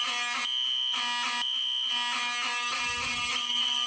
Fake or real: real